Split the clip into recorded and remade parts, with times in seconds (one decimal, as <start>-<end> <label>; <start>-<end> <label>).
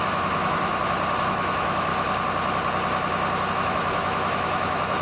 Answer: 0.0-0.7 remade; 0.7-1.3 recorded; 1.3-1.9 remade; 1.9-3.5 recorded; 3.5-5.0 remade